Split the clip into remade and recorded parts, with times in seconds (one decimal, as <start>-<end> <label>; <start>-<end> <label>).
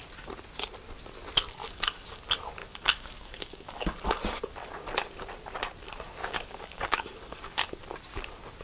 0.0-1.6 recorded; 1.6-2.2 remade; 2.2-2.6 recorded; 2.6-4.2 remade; 4.2-6.2 recorded; 6.2-7.7 remade; 7.7-8.6 recorded